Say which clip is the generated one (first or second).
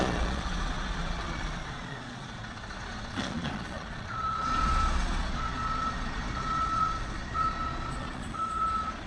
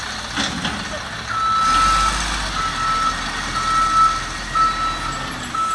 first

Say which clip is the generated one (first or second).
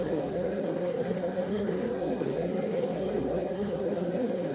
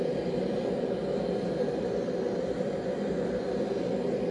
first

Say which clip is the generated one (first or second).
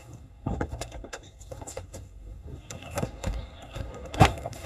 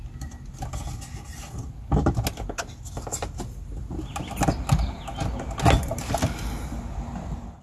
first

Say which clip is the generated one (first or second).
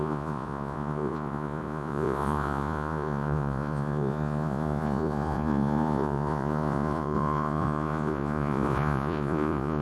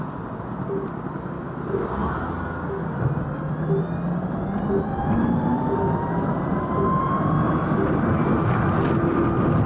first